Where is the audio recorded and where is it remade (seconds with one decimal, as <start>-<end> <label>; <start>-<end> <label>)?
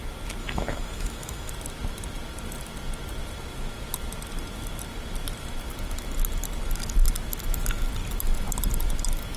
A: 0.0-0.4 recorded; 0.4-1.5 remade; 1.5-9.4 recorded